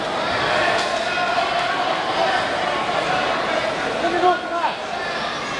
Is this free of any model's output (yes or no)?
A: yes